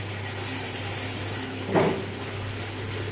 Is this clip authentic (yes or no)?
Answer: yes